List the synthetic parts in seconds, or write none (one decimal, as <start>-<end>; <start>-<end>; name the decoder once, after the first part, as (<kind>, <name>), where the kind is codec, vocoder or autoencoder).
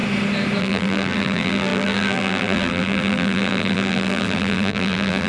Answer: 0.6-5.3 (vocoder, BigVGAN v2)